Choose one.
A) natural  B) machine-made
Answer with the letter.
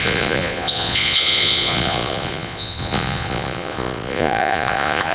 B